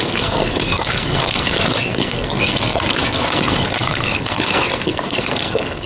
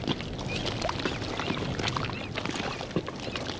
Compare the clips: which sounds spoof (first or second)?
first